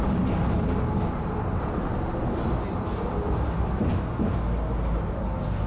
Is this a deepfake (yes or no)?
no